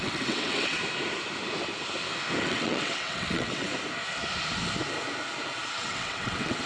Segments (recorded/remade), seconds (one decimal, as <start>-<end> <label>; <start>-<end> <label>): 0.0-0.8 remade; 0.8-2.4 recorded; 2.4-3.7 remade; 3.7-5.7 recorded; 5.7-6.7 remade